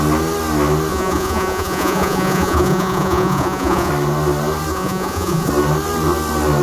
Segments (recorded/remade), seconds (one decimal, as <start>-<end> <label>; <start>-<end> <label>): 0.0-0.9 recorded; 0.9-3.9 remade; 3.9-4.7 recorded; 4.7-5.5 remade; 5.5-6.6 recorded